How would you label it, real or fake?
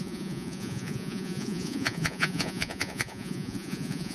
fake